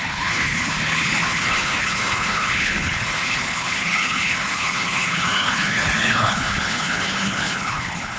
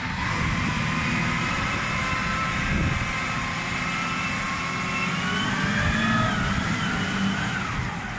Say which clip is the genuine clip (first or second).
second